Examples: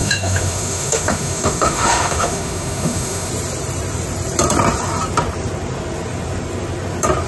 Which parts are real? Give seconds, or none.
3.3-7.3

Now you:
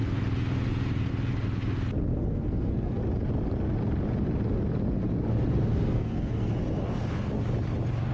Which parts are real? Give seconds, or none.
0.0-2.1; 3.0-5.7; 6.5-8.1

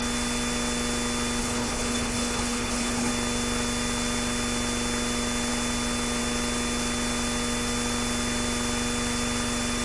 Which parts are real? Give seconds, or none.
0.0-1.4; 3.1-9.8

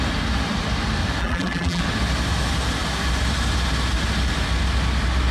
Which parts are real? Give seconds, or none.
0.0-1.2; 1.8-5.3

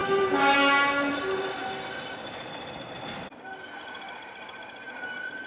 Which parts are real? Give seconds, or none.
0.0-5.5